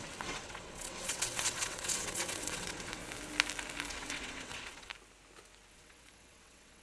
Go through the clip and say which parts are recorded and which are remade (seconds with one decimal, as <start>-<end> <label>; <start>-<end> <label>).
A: 0.0-3.0 remade; 3.0-3.9 recorded; 3.9-4.9 remade; 4.9-5.7 recorded; 5.7-6.8 remade